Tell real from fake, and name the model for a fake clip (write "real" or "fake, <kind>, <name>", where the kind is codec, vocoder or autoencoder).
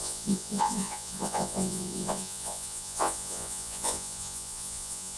fake, vocoder, Vocos